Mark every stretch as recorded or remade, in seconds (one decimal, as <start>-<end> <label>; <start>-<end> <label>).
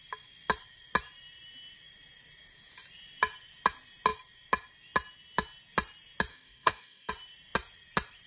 0.0-6.3 recorded; 6.3-7.1 remade; 7.1-8.3 recorded